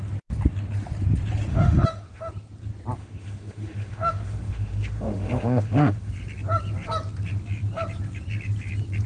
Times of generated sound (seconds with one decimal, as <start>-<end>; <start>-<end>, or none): 1.5-2.3; 3.0-6.1